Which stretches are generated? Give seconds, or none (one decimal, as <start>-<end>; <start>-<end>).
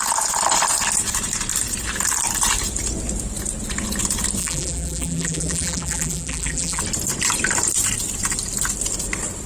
4.4-6.8